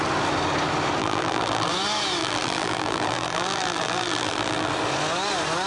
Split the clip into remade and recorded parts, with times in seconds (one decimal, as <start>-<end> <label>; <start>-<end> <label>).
0.0-1.0 recorded; 1.0-1.7 remade; 1.7-2.2 recorded; 2.2-4.7 remade; 4.7-5.7 recorded